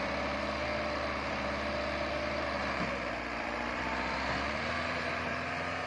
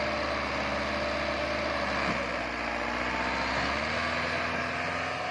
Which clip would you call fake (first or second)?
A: first